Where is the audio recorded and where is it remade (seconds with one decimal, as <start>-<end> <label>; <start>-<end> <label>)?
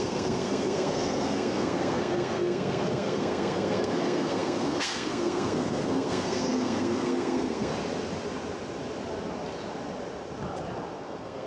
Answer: 0.0-7.7 remade; 7.7-11.0 recorded; 11.0-11.5 remade